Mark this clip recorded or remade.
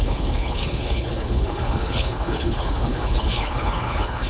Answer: remade